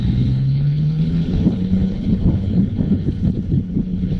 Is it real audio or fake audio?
fake